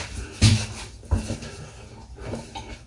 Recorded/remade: recorded